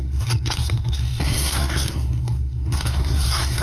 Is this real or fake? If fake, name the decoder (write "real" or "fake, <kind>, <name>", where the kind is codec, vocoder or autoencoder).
fake, codec, SNAC